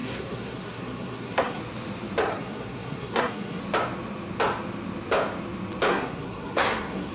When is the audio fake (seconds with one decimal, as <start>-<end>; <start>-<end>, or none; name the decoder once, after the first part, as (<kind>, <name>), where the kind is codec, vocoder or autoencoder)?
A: 0.0-1.6 (codec, SNAC); 2.3-3.6; 5.9-7.1

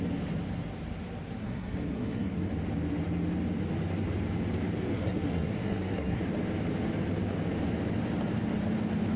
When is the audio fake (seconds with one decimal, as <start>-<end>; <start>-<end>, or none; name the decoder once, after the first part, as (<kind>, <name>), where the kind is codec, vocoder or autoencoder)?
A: 1.4-2.5 (codec, SNAC); 4.9-6.2

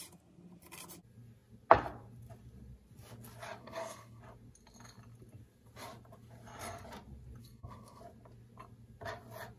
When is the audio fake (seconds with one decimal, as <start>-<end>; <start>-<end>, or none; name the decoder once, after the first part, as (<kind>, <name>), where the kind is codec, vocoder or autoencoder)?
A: 3.6-4.2 (codec, SNAC); 7.4-8.0